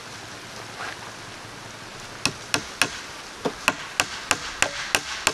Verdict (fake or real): real